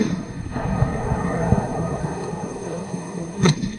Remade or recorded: remade